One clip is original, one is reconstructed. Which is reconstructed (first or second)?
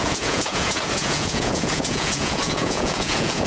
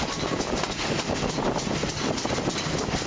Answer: first